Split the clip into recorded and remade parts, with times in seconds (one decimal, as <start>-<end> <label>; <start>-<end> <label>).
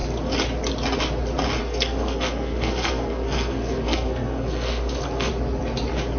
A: 0.0-1.6 recorded; 1.6-5.3 remade; 5.3-6.2 recorded